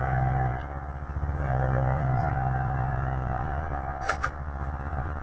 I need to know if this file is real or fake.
fake